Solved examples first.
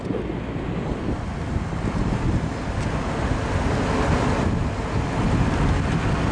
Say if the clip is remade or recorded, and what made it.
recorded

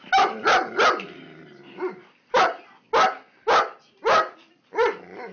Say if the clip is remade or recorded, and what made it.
recorded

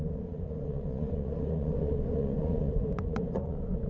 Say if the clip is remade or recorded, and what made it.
remade, vocoder, Vocos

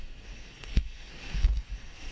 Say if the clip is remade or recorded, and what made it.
remade, codec, SNAC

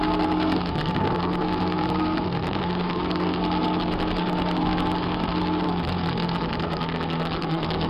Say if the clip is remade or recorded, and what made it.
remade, codec, SNAC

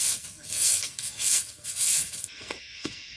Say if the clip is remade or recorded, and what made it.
remade, codec, SNAC